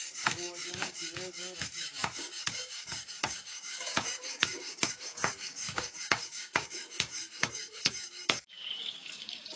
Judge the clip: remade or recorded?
remade